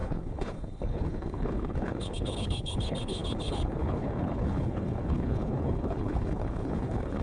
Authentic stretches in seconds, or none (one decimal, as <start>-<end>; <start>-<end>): none